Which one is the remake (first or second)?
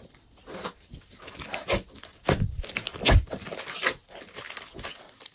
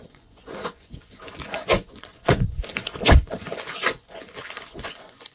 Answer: second